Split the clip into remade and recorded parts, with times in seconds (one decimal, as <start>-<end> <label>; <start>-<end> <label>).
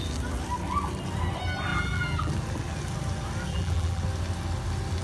0.0-1.7 recorded; 1.7-2.3 remade; 2.3-3.5 recorded; 3.5-4.0 remade; 4.0-5.0 recorded